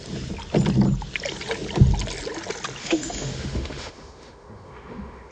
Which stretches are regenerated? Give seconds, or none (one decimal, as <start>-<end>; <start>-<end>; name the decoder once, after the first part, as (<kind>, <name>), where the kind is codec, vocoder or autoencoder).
2.8-5.3 (autoencoder, DAC-VAE)